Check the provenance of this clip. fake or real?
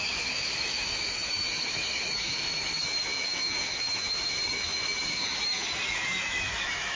fake